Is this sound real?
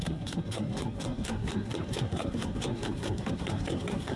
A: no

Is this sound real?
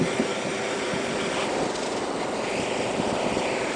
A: yes